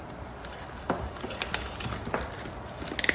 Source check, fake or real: real